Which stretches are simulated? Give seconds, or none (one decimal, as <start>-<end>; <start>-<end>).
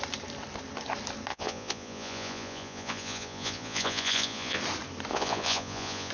1.3-4.6; 5.1-6.1